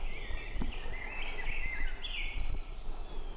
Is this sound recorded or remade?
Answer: recorded